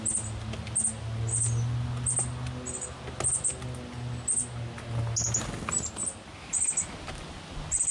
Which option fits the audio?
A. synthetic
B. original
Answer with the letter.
B